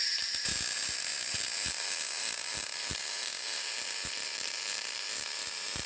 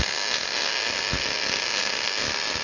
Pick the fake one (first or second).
first